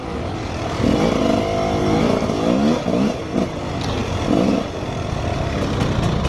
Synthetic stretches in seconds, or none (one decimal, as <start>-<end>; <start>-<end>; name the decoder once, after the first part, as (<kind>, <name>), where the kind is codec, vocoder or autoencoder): none